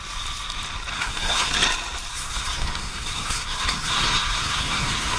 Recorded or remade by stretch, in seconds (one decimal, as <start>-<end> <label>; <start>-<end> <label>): 0.0-0.9 recorded; 0.9-1.5 remade; 1.5-2.1 recorded; 2.1-5.2 remade